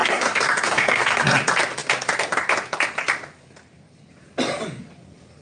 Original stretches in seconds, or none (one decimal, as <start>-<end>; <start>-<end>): 1.4-5.4